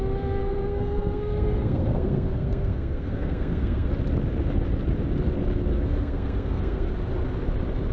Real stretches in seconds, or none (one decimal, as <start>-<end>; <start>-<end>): 0.0-0.4; 3.9-5.7; 6.9-7.9